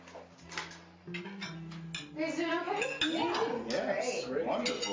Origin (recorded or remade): recorded